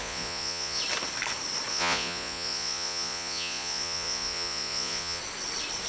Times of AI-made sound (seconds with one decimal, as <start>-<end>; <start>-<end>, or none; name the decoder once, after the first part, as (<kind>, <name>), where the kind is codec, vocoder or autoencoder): 0.0-0.8 (vocoder, Vocos); 1.7-5.2